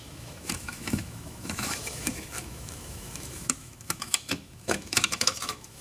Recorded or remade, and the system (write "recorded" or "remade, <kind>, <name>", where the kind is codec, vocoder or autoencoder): remade, autoencoder, DAC-VAE